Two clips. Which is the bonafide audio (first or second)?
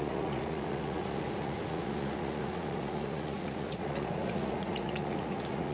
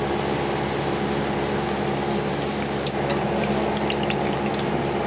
second